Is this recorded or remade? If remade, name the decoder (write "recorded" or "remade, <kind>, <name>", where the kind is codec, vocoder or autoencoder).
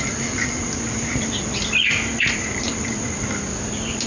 remade, vocoder, BigVGAN v2